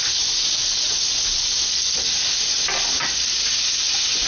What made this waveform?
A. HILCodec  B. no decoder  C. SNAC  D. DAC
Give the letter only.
B